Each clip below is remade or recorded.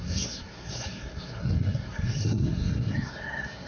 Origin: remade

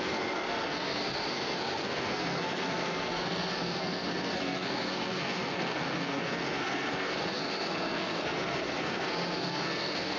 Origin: remade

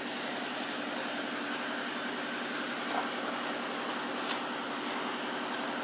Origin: recorded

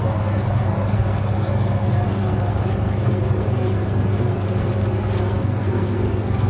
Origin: remade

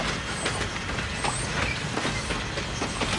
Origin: recorded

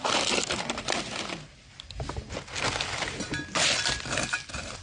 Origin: recorded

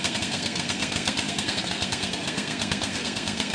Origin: remade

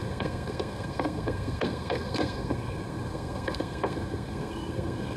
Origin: remade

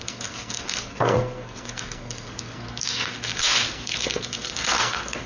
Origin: remade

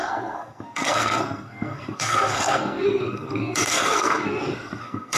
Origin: remade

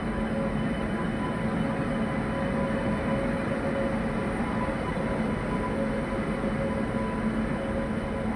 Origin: recorded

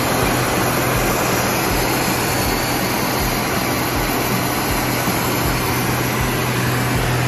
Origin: recorded